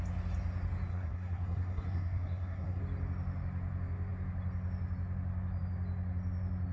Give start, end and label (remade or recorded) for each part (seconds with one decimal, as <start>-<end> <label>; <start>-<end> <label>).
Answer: 0.0-0.9 recorded; 0.9-2.8 remade; 2.8-6.7 recorded